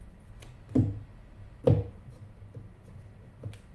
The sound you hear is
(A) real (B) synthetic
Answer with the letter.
A